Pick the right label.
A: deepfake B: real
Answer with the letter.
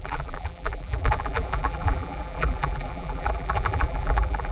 A